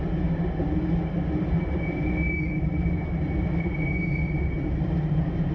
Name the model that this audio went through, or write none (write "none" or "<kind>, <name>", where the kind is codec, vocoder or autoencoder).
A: none